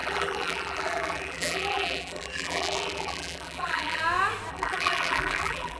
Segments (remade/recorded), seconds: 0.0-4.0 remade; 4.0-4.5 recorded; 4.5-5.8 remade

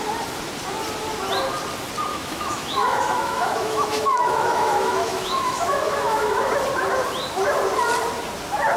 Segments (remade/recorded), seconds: 0.0-2.1 recorded; 2.1-6.5 remade; 6.5-8.8 recorded

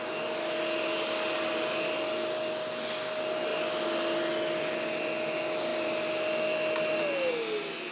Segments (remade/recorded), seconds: 0.0-7.9 recorded

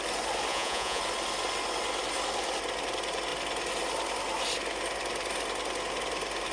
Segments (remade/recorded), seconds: 0.0-0.5 recorded; 0.5-1.0 remade; 1.0-6.5 recorded

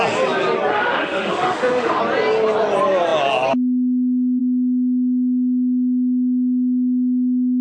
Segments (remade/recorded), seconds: 0.0-0.7 recorded; 0.7-2.0 remade; 2.0-7.6 recorded